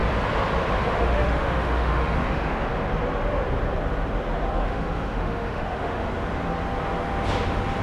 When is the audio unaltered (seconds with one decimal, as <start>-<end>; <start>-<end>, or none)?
0.0-1.0; 2.7-4.5; 6.1-7.8